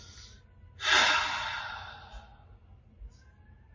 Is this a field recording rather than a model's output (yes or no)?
yes